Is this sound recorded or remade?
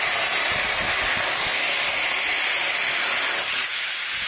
recorded